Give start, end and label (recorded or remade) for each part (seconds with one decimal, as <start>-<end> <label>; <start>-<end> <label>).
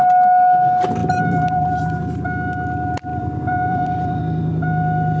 0.0-1.0 recorded; 1.0-2.0 remade; 2.0-3.1 recorded; 3.1-4.2 remade; 4.2-5.2 recorded